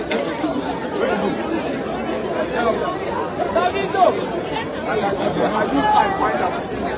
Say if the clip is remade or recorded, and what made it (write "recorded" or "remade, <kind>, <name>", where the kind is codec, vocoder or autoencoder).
recorded